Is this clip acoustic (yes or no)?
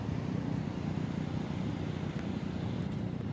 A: yes